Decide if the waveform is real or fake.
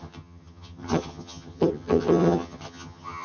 fake